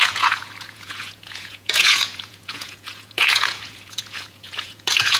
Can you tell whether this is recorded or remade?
remade